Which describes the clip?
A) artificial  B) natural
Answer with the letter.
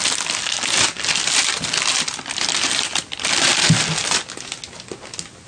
B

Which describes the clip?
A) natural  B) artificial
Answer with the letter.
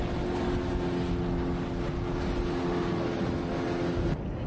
A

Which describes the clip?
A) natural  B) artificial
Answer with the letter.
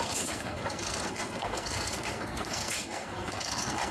B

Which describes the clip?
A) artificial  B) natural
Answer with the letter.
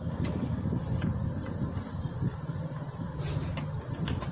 B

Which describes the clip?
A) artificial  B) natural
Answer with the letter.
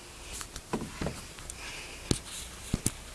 B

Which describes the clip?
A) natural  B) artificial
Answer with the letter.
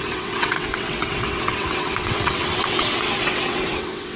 B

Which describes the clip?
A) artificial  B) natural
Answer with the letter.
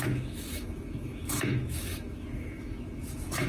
A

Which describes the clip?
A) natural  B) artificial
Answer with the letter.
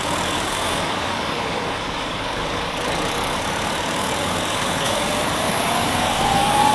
B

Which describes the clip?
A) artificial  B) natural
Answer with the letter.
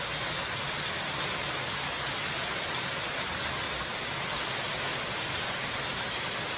B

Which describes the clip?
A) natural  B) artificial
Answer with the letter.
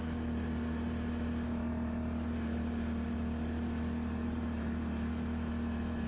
A